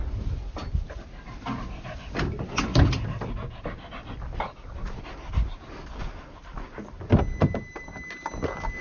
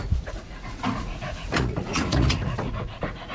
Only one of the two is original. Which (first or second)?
first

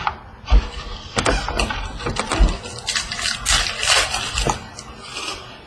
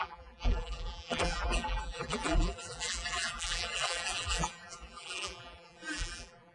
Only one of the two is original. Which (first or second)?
first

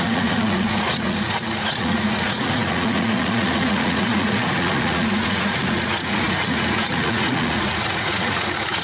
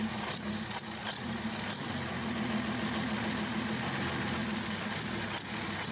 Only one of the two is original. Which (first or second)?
second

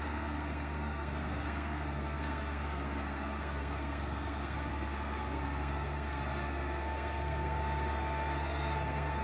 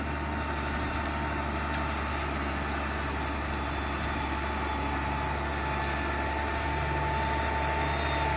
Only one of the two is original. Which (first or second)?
second